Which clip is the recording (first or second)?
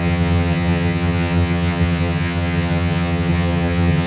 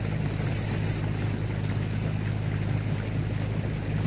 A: second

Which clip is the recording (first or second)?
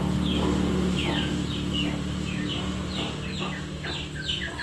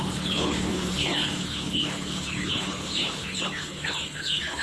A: first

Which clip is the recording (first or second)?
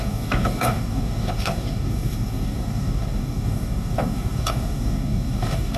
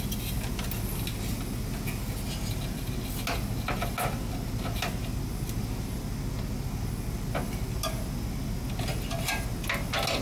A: second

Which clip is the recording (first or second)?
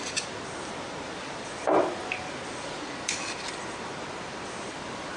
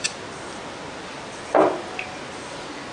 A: second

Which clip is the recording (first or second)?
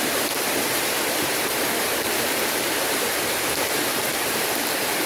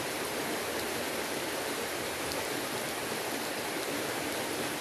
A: second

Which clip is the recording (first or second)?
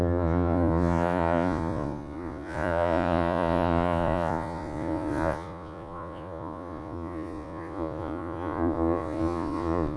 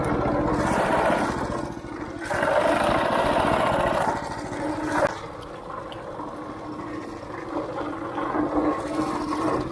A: second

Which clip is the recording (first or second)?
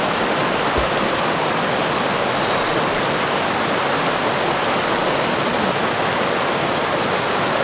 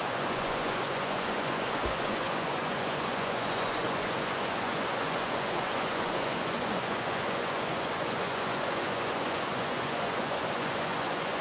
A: first